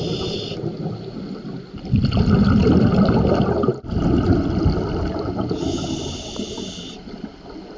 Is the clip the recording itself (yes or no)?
yes